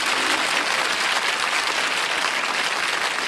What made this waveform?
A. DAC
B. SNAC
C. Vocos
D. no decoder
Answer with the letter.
D